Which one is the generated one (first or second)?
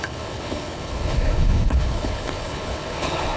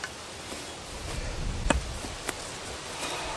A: first